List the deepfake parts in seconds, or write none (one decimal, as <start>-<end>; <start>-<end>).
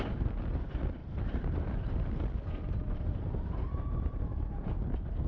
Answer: 1.0-3.5